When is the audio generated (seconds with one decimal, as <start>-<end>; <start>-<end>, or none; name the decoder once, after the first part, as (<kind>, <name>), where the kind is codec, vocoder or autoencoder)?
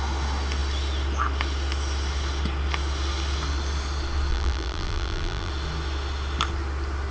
4.3-5.5 (vocoder, BigVGAN v2)